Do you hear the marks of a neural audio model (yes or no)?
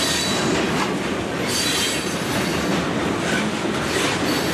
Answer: no